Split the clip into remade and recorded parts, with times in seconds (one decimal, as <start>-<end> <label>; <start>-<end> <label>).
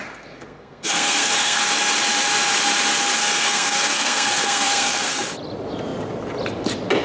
0.0-1.6 remade; 1.6-3.2 recorded; 3.2-5.2 remade; 5.2-7.0 recorded